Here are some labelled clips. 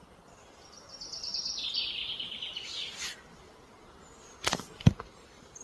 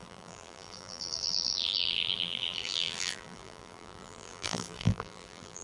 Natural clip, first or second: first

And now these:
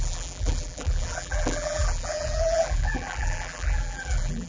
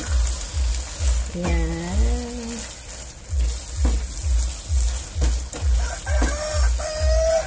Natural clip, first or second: second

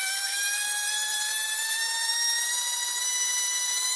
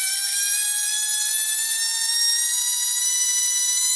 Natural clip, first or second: second